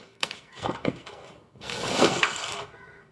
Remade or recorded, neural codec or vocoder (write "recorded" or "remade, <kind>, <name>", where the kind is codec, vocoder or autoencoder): remade, codec, SNAC